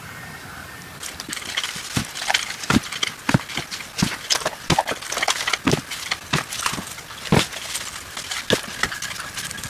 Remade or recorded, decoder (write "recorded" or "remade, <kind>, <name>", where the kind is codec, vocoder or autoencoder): recorded